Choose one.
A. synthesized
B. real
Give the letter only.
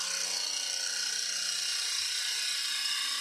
B